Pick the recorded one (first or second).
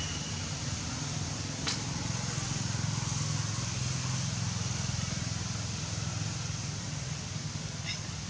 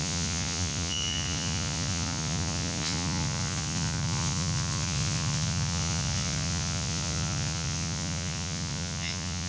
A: first